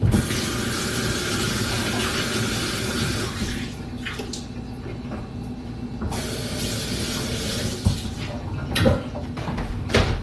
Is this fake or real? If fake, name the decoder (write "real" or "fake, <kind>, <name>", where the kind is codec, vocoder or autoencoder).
real